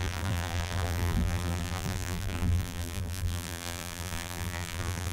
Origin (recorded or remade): remade